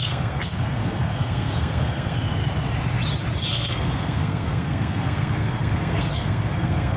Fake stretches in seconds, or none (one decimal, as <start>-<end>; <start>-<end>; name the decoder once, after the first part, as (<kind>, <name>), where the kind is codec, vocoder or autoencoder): 0.0-2.4 (codec, SNAC); 3.5-7.0